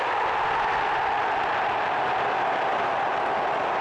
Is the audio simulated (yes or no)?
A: no